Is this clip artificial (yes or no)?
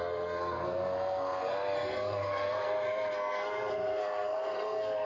yes